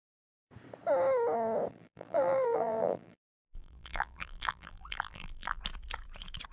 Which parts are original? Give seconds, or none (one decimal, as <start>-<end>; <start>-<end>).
0.0-1.7; 5.6-6.5